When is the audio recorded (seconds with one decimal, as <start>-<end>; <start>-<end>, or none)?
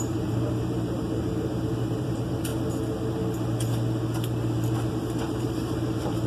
2.5-4.9